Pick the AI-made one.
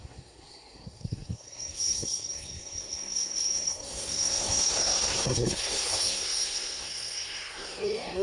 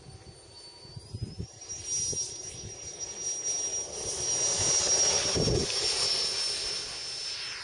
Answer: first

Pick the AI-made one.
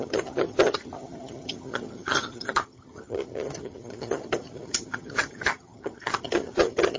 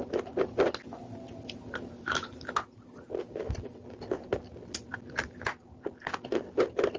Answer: first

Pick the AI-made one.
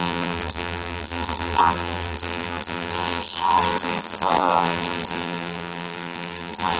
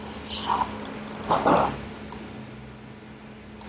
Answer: first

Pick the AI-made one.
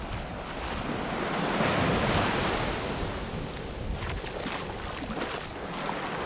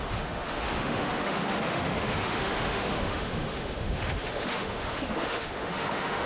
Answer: second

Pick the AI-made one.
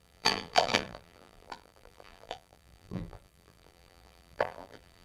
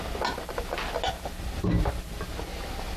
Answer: first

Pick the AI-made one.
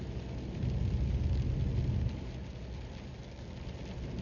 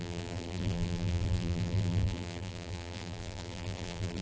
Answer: second